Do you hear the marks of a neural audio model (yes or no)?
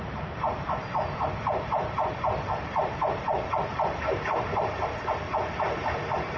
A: yes